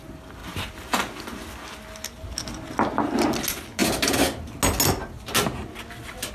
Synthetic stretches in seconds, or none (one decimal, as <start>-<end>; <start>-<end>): none